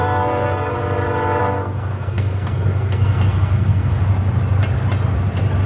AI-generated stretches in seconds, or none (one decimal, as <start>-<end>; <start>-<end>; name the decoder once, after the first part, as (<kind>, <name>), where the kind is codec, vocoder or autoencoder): 0.0-0.7 (codec, SNAC); 1.4-3.9